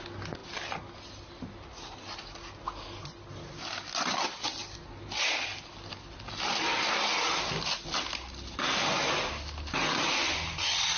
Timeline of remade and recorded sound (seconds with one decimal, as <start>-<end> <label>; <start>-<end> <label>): 0.0-11.0 recorded